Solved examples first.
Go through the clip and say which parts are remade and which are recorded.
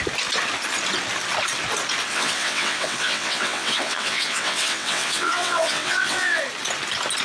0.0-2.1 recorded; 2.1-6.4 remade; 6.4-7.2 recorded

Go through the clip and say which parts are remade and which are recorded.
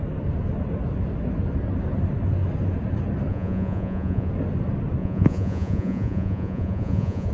0.0-3.3 recorded; 3.3-4.3 remade; 4.3-5.0 recorded; 5.0-7.3 remade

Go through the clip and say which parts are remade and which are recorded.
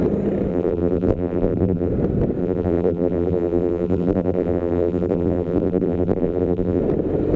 0.0-0.5 recorded; 0.5-1.9 remade; 1.9-2.4 recorded; 2.4-6.8 remade; 6.8-7.4 recorded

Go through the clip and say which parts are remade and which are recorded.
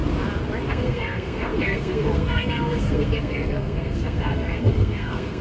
0.0-0.7 recorded; 0.7-5.4 remade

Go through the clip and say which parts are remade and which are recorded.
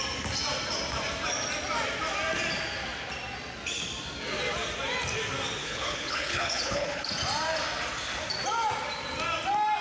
0.0-5.6 recorded; 5.6-7.1 remade; 7.1-9.8 recorded